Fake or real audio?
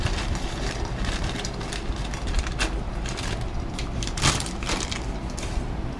fake